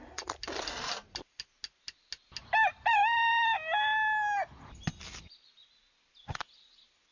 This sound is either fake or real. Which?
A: real